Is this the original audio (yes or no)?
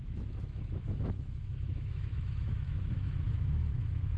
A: no